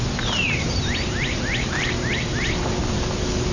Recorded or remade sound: recorded